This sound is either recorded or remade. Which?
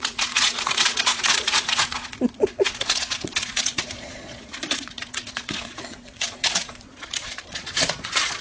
remade